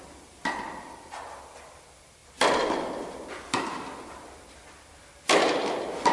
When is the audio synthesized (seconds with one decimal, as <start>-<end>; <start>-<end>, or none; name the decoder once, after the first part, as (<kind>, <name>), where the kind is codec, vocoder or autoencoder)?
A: none